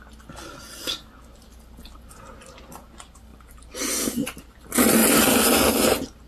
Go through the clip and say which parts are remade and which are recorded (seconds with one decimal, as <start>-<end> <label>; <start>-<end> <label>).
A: 0.0-6.3 recorded